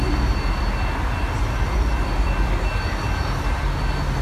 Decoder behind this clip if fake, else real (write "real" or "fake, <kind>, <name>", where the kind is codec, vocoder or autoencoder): real